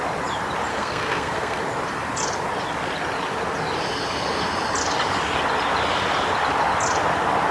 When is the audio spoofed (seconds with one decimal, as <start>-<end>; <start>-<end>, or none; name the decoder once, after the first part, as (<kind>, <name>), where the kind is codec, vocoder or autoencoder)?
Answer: 0.7-1.6 (codec, SNAC)